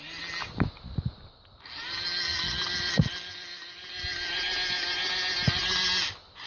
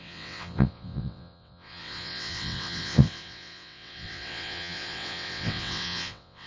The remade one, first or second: second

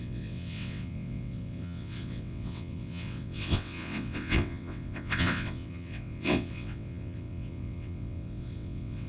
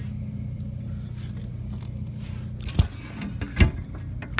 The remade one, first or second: first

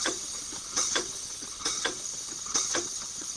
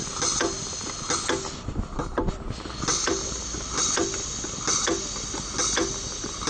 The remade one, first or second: first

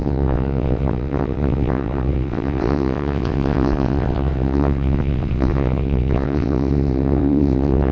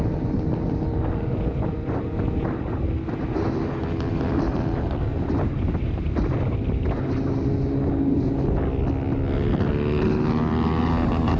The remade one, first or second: first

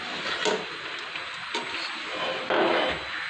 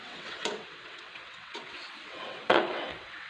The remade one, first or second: second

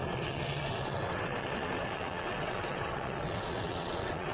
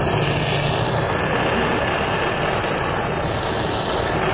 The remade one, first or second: first